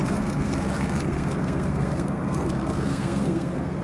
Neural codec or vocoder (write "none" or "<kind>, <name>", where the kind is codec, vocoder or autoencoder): codec, SNAC